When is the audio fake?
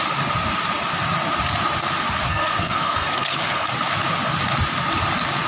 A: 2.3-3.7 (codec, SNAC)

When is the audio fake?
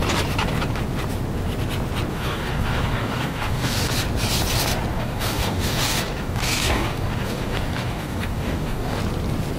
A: 2.1-3.9 (codec, DAC); 4.9-9.0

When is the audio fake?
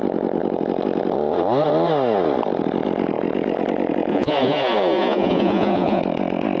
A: 4.1-6.0 (vocoder, Vocos)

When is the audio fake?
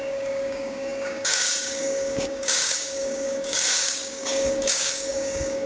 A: 0.0-5.7 (codec, DAC)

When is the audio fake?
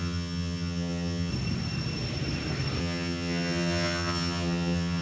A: 0.0-1.3 (vocoder, HiFi-GAN); 2.8-5.0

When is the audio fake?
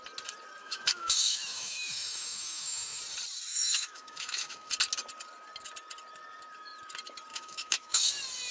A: 0.6-3.0 (autoencoder, DAC-VAE); 3.5-4.7; 7.3-8.1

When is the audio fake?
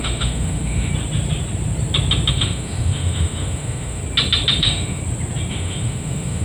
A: 0.0-0.9 (autoencoder, DAC-VAE); 2.3-4.0; 4.6-5.0; 5.5-6.4